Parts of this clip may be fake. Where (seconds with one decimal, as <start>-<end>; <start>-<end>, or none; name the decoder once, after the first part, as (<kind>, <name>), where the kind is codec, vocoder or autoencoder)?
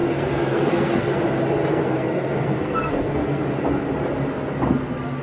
0.0-1.2 (codec, SNAC); 1.7-3.4